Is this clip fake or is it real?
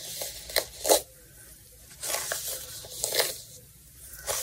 real